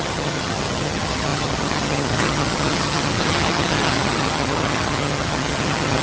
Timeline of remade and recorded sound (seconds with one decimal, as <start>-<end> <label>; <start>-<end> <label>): 0.0-6.0 remade